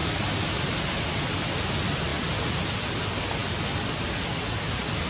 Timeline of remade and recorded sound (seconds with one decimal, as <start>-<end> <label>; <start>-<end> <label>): 0.0-5.1 recorded